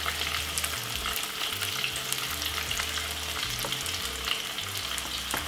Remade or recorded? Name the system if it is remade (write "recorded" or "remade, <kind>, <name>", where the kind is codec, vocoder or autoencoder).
recorded